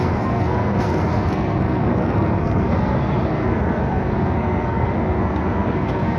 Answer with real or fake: fake